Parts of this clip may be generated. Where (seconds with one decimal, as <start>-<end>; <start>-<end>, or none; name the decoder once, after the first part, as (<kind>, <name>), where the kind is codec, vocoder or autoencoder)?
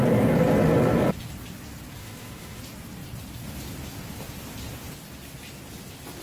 2.0-2.6 (autoencoder, DAC-VAE)